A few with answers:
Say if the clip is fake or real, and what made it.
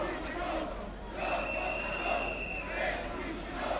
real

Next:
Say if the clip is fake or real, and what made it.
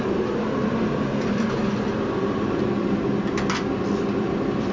real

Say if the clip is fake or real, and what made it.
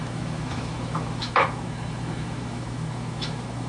fake, autoencoder, DAC-VAE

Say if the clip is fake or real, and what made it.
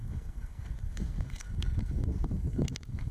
fake, codec, SNAC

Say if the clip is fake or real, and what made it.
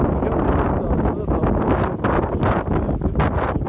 real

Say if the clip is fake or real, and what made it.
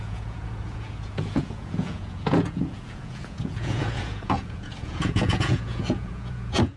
fake, vocoder, Vocos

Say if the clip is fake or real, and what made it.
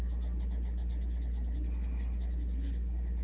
real